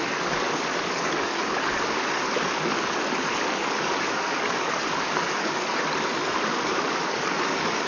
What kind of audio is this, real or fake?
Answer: fake